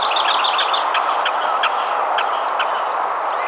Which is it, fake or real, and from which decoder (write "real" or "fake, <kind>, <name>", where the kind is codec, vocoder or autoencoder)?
real